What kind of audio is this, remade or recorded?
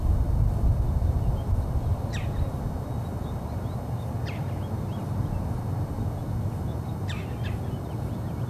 recorded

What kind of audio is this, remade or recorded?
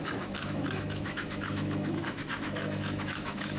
remade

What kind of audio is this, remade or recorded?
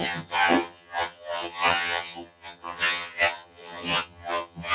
remade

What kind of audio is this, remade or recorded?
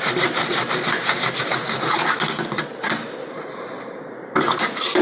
remade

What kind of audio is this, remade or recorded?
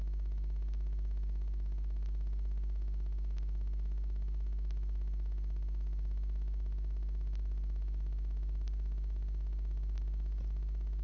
recorded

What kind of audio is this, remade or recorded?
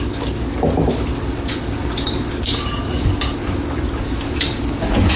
remade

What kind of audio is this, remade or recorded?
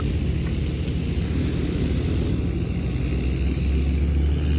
recorded